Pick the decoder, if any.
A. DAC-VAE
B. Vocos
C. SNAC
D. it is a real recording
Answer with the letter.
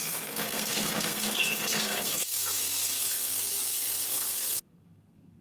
C